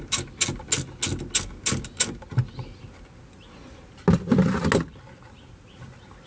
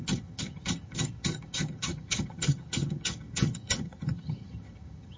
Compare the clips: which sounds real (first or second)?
first